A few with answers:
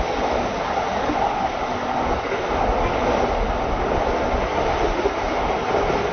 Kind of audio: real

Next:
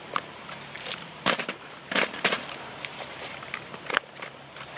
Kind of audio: fake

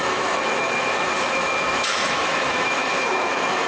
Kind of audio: fake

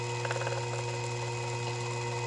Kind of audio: real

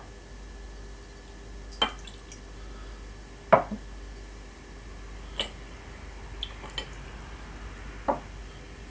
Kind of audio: real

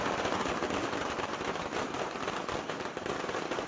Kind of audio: fake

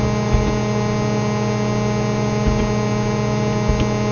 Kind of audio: real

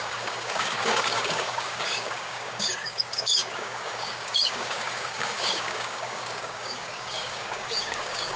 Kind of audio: fake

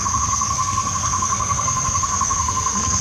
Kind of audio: fake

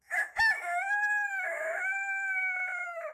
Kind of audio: fake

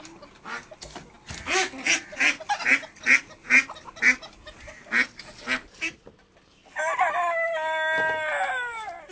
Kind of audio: real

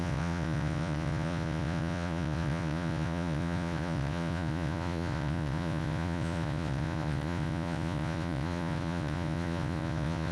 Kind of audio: fake